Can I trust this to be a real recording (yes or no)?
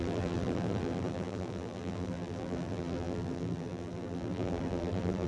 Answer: no